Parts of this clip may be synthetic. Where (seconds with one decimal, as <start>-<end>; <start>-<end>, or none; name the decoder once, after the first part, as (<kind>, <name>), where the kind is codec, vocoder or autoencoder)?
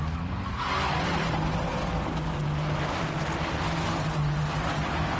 none